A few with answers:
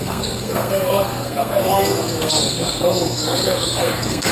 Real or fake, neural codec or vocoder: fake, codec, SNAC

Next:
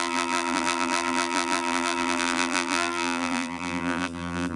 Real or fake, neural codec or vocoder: fake, vocoder, BigVGAN v2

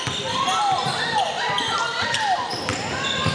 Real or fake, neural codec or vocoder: real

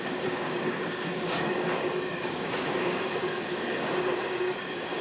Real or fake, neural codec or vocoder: fake, codec, DAC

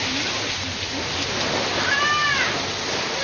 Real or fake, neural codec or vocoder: real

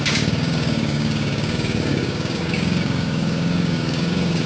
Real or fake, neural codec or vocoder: fake, codec, DAC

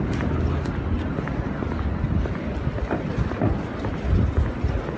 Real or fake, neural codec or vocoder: real